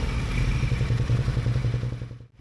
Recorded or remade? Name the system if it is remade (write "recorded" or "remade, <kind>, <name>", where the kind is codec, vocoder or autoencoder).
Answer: recorded